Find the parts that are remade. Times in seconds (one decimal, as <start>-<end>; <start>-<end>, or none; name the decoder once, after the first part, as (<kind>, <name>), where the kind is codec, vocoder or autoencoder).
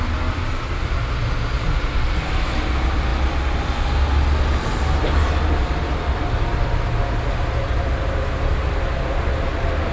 none